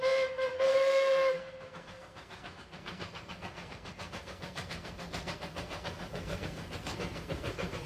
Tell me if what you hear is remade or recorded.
remade